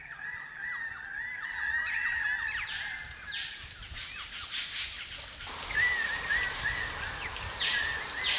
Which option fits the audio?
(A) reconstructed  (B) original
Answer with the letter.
B